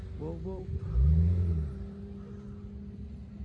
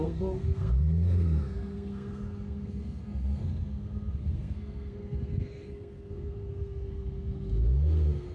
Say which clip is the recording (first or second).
first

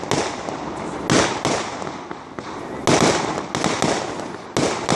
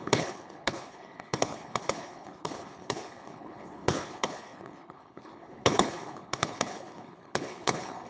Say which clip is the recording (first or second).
first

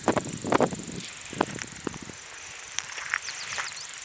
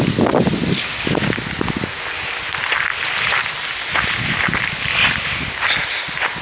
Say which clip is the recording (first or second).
second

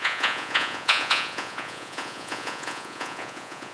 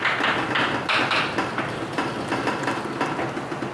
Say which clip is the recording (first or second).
second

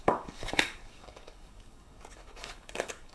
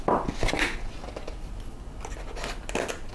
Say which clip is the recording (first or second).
second